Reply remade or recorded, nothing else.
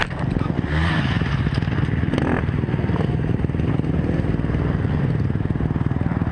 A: recorded